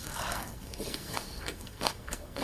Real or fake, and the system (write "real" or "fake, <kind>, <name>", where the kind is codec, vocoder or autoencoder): fake, codec, SNAC